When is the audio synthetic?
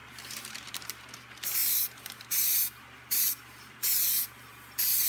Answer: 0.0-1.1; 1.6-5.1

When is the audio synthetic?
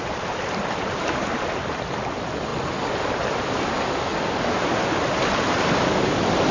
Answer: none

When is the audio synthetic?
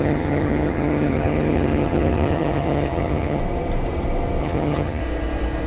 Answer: 0.0-3.4; 4.4-5.0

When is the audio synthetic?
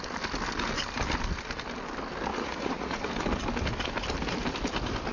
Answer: 2.3-3.1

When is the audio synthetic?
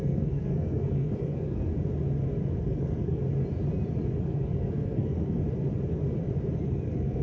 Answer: 0.0-1.7; 2.6-3.2; 4.2-5.4; 6.6-7.2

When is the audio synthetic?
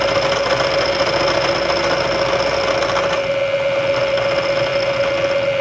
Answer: none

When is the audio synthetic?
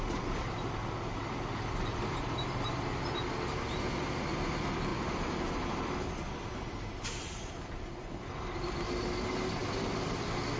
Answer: 1.9-2.7; 4.9-8.1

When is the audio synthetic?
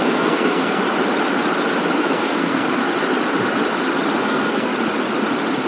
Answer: 0.0-0.8; 2.0-2.8; 4.2-4.7